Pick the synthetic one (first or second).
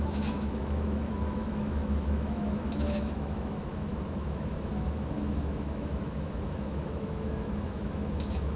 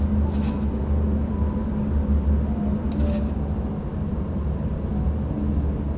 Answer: first